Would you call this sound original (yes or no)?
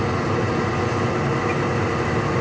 yes